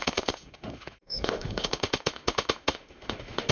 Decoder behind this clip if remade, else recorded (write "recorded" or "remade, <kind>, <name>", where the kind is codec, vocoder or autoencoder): remade, autoencoder, DAC-VAE